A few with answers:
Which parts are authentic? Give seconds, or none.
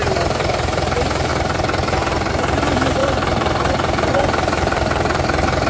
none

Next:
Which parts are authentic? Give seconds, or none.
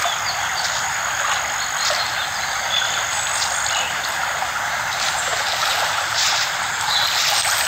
0.0-5.3; 7.0-7.7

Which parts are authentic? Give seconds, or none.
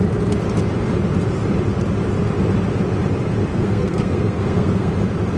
0.0-3.5; 4.9-5.4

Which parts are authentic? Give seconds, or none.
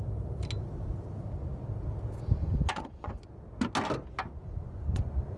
0.0-2.4; 3.1-4.4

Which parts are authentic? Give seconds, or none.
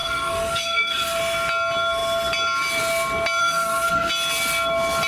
1.2-3.4; 4.1-5.1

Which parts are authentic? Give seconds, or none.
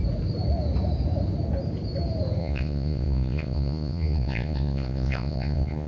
0.0-2.4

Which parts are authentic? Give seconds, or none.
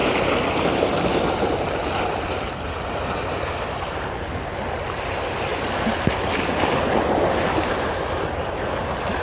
0.0-9.2